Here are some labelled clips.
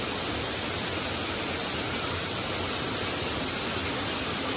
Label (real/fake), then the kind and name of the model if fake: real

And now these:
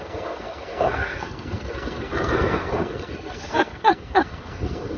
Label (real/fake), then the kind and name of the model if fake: fake, codec, SNAC